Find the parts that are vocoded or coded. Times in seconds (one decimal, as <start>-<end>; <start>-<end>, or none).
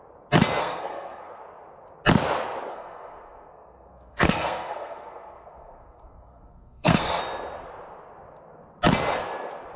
0.6-1.4; 2.7-7.2